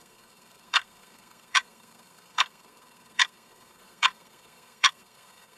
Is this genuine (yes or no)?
no